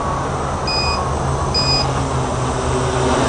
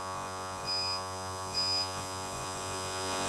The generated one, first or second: second